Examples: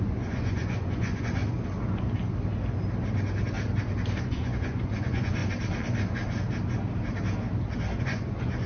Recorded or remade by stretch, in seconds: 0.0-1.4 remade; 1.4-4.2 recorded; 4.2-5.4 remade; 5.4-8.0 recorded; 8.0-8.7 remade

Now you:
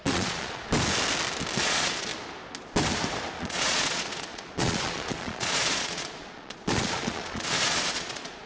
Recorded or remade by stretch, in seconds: 0.0-0.6 remade; 0.6-1.6 recorded; 1.6-2.1 remade; 2.1-3.4 recorded; 3.4-8.5 remade

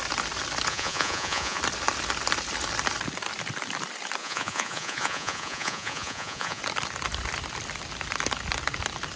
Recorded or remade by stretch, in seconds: 0.0-0.7 recorded; 0.7-1.6 remade; 1.6-4.2 recorded; 4.2-6.6 remade; 6.6-9.2 recorded

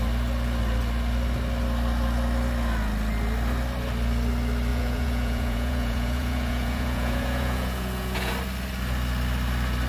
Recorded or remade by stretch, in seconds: 0.0-4.7 recorded; 4.7-8.3 remade; 8.3-9.9 recorded

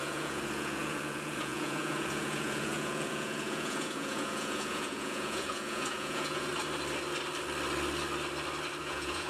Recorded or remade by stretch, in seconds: 0.0-6.5 remade; 6.5-8.8 recorded; 8.8-9.3 remade

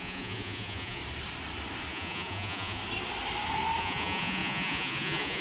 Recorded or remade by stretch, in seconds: 0.0-1.0 remade; 1.0-1.9 recorded; 1.9-2.8 remade; 2.8-3.8 recorded; 3.8-5.4 remade

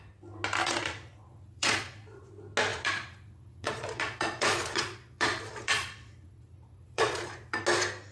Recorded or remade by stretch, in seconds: 0.0-0.6 recorded; 0.6-2.3 remade; 2.3-2.7 recorded; 2.7-7.6 remade; 7.6-8.1 recorded

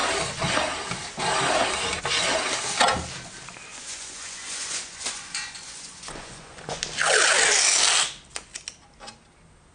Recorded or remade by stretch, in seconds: 0.0-3.7 recorded; 3.7-6.8 remade; 6.8-9.7 recorded